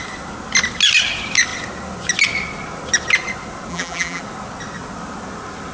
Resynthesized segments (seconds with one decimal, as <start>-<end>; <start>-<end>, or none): 3.7-4.2